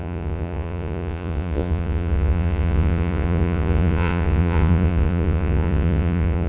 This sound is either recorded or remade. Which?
remade